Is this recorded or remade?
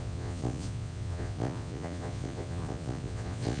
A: remade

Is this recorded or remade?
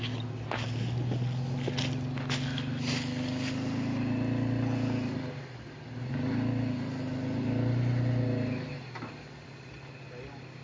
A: recorded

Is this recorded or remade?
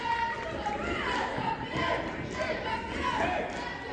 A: recorded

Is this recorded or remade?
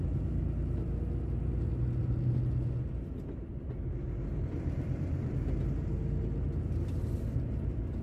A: recorded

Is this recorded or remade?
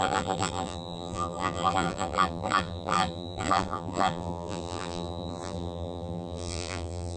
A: remade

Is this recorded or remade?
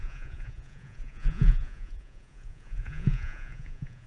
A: remade